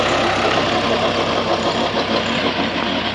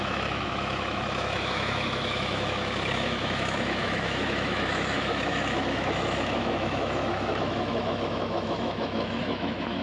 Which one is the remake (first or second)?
second